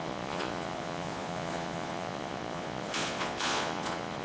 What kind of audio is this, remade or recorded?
remade